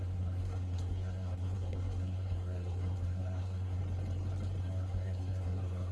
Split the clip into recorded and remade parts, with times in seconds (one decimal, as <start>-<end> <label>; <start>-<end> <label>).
0.0-3.8 remade; 3.8-4.6 recorded; 4.6-5.9 remade